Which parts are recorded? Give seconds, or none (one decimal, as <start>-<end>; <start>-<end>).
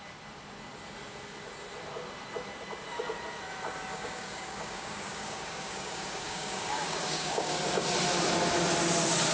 0.0-3.9; 7.6-9.3